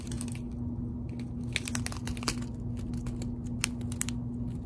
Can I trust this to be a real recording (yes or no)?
yes